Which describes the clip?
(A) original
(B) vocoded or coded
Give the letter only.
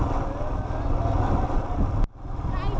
A